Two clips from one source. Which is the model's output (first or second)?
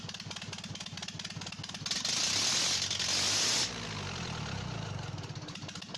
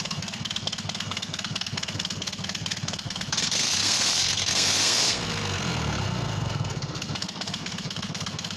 second